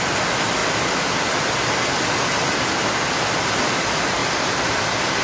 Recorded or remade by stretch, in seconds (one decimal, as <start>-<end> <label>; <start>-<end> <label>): 0.0-5.2 recorded